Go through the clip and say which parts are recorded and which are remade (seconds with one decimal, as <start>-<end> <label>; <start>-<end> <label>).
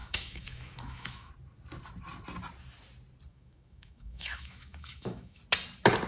0.0-1.3 remade; 1.3-3.3 recorded; 3.3-5.4 remade; 5.4-6.1 recorded